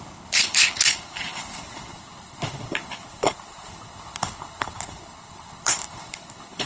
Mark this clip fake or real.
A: fake